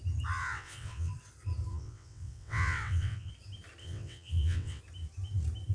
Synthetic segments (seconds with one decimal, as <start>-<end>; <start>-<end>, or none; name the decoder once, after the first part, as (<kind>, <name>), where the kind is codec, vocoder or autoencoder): 0.4-1.1 (vocoder, WaveNeXt); 1.7-3.3; 3.8-4.8